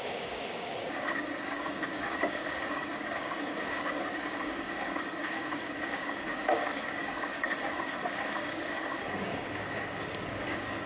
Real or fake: fake